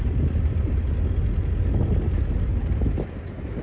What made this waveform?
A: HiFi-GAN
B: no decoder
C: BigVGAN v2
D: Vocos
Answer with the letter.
B